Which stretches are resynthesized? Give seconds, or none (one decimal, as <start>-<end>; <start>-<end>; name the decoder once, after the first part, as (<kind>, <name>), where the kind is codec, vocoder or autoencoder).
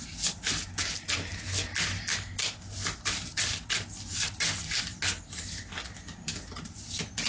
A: none